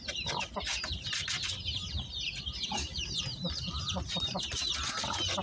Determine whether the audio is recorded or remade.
recorded